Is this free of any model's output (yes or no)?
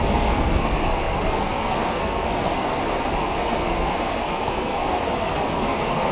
no